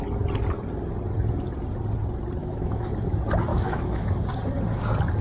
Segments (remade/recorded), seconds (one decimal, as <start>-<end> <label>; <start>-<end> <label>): 0.0-2.4 recorded; 2.4-2.9 remade; 2.9-3.5 recorded; 3.5-4.1 remade; 4.1-5.2 recorded

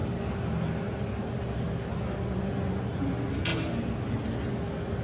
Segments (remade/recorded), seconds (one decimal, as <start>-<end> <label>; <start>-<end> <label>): 0.0-5.0 recorded

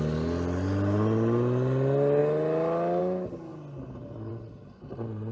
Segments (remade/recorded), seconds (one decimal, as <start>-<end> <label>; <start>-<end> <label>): 0.0-5.3 recorded

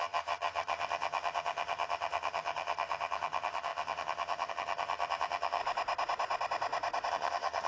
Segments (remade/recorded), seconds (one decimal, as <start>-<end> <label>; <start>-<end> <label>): 0.0-5.6 remade; 5.6-7.1 recorded; 7.1-7.7 remade